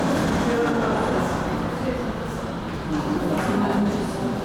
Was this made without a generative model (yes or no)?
yes